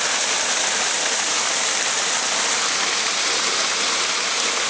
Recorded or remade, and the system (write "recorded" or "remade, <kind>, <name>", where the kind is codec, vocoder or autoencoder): remade, vocoder, BigVGAN v2